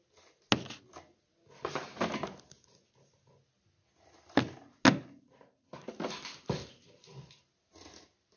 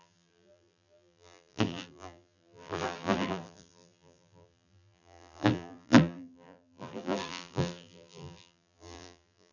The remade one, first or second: second